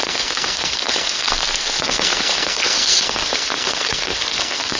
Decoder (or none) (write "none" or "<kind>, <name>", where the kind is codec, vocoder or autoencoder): codec, SNAC